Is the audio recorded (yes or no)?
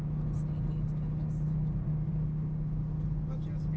yes